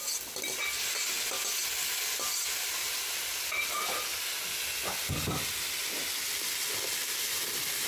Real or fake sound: real